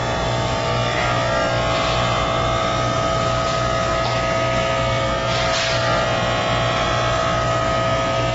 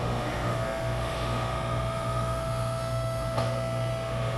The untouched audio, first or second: first